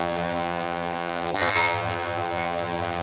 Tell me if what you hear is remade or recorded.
remade